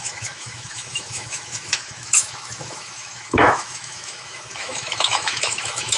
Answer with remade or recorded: remade